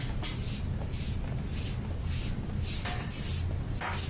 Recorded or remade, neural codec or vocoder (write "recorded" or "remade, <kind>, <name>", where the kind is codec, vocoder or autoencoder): recorded